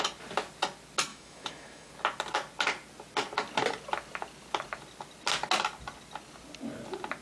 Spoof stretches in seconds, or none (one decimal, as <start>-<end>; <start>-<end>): 1.1-1.9